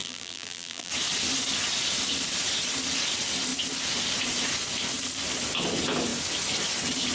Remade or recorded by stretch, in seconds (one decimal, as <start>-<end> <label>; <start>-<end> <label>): 0.0-0.9 remade; 0.9-7.1 recorded